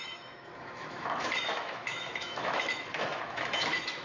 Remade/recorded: remade